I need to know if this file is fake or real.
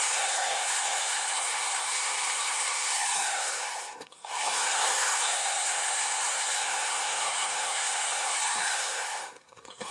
fake